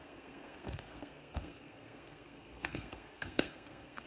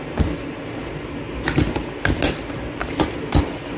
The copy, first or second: first